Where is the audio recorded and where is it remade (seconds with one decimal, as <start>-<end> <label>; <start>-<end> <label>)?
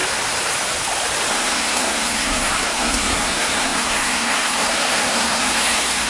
0.0-1.3 recorded; 1.3-6.1 remade